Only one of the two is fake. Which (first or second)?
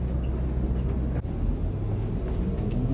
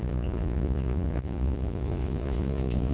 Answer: second